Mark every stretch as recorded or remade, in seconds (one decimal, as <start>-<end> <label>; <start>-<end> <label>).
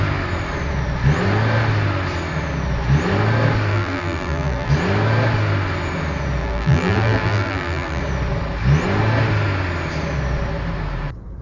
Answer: 0.0-3.7 recorded; 3.7-4.7 remade; 4.7-6.4 recorded; 6.4-8.0 remade; 8.0-11.4 recorded